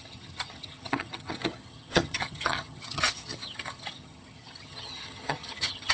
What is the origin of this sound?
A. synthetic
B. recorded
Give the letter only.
A